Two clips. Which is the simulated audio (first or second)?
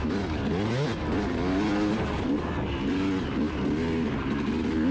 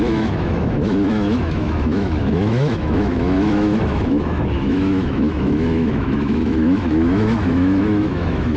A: second